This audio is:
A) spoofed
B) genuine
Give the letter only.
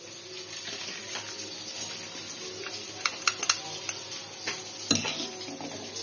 B